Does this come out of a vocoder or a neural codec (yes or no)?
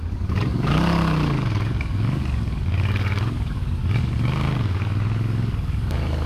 yes